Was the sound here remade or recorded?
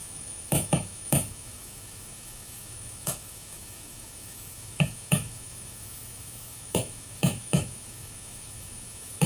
remade